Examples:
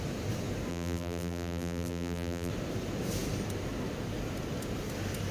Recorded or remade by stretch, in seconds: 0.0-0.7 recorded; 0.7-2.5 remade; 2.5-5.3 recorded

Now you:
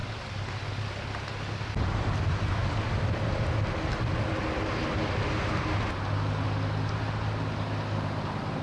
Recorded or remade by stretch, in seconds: 0.0-8.6 recorded

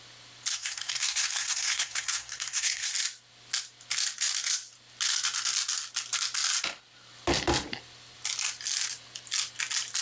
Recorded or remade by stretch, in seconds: 0.0-0.5 recorded; 0.5-2.9 remade; 2.9-10.0 recorded

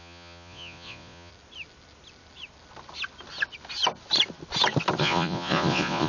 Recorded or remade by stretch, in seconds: 0.0-1.3 remade; 1.3-5.0 recorded; 5.0-6.1 remade

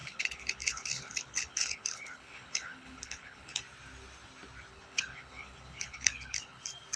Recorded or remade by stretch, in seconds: 0.0-3.6 remade; 3.6-4.7 recorded; 4.7-6.6 remade; 6.6-7.0 recorded

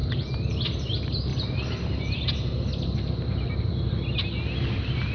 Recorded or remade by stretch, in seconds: 0.0-1.3 recorded; 1.3-2.1 remade; 2.1-5.1 recorded

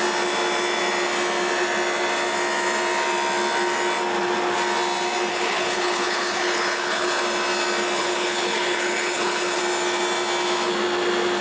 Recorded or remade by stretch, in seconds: 0.0-5.3 recorded; 5.3-7.2 remade; 7.2-8.0 recorded; 8.0-9.6 remade; 9.6-11.4 recorded